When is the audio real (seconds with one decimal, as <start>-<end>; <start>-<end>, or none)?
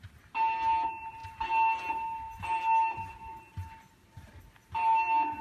0.0-5.4